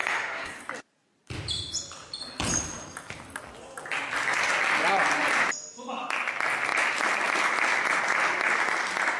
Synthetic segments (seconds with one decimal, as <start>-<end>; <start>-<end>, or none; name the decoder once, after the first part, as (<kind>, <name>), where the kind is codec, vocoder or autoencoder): 0.0-0.6 (codec, SNAC)